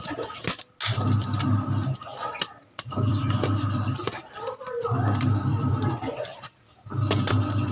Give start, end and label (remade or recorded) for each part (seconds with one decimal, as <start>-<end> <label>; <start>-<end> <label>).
0.0-2.1 recorded; 2.1-5.7 remade; 5.7-7.7 recorded